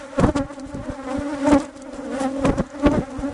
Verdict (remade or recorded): recorded